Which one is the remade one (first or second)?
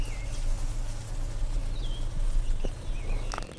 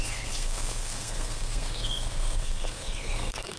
second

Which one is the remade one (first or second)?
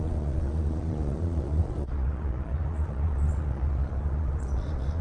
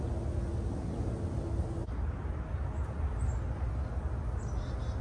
first